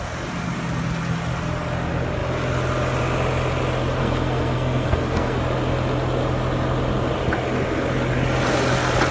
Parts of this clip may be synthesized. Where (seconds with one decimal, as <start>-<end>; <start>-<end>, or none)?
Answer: 4.0-5.4